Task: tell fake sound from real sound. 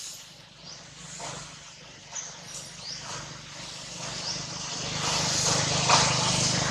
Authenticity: real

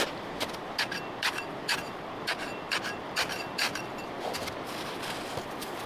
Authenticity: real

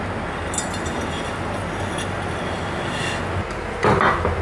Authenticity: real